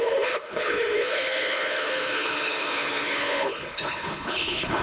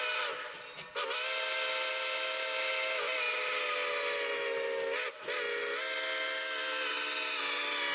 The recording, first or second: second